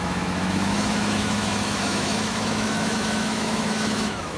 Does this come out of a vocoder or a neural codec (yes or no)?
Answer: yes